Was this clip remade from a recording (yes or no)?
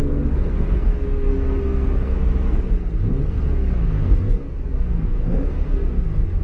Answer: yes